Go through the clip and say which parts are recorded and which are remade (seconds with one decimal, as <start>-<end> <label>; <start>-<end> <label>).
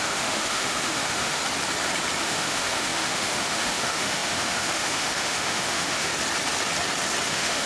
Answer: 0.0-1.4 remade; 1.4-2.2 recorded; 2.2-6.1 remade; 6.1-7.3 recorded; 7.3-7.7 remade